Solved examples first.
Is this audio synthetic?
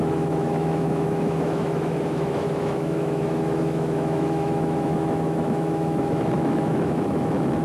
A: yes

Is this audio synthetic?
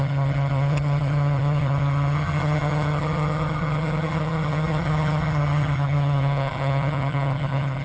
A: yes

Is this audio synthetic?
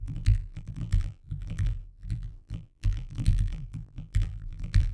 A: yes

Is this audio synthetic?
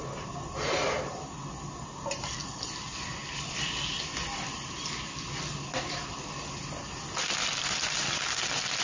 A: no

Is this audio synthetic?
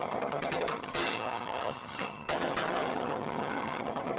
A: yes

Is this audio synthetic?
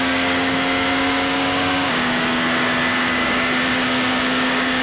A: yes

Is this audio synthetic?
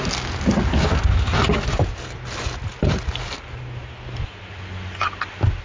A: no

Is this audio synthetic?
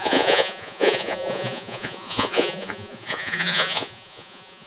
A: yes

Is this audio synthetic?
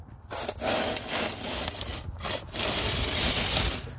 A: no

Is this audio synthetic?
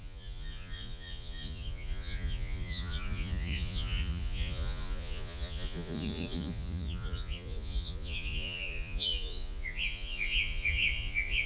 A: yes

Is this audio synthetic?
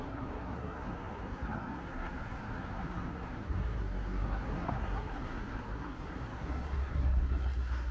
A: yes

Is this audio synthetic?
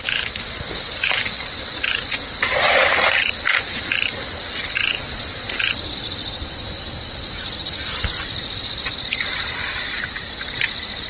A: no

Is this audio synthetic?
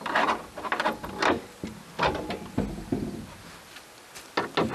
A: no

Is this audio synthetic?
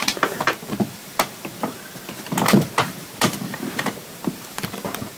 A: yes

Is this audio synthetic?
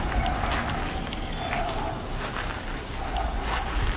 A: no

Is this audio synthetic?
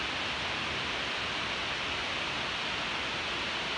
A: no